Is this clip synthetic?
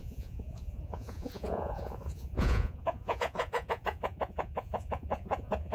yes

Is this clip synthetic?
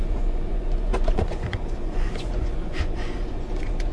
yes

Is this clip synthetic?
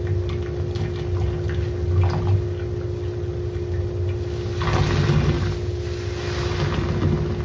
no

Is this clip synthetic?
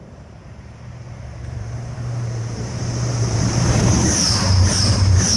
yes